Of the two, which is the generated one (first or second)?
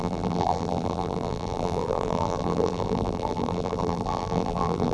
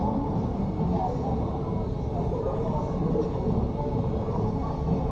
first